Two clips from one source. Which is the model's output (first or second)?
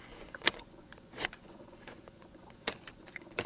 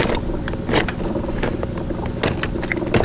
first